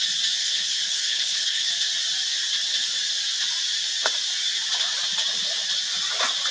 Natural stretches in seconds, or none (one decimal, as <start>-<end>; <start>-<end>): 0.0-0.4; 1.7-6.5